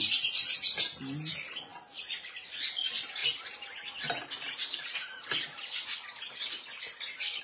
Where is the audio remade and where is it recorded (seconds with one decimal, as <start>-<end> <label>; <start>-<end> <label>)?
0.0-7.4 recorded

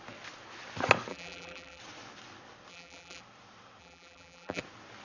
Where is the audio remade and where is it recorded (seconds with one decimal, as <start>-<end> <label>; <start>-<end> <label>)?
0.0-1.1 recorded; 1.1-1.8 remade; 1.8-2.7 recorded; 2.7-3.2 remade; 3.2-3.8 recorded; 3.8-4.6 remade; 4.6-5.0 recorded

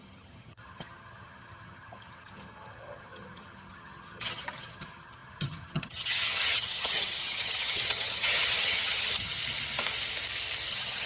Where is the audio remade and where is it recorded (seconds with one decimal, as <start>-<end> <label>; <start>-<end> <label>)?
0.0-9.4 remade; 9.4-10.7 recorded; 10.7-11.1 remade

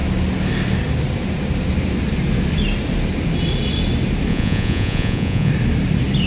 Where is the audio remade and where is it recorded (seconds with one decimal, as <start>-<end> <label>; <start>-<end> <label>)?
0.0-4.3 recorded; 4.3-5.5 remade; 5.5-6.3 recorded

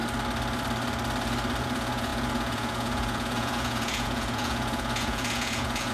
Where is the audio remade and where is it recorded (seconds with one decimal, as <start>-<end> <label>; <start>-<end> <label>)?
0.0-1.6 recorded; 1.6-5.9 remade

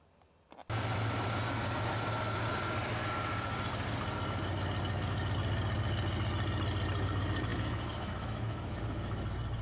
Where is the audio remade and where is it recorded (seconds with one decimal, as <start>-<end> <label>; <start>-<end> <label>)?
0.0-7.5 recorded; 7.5-8.8 remade; 8.8-9.6 recorded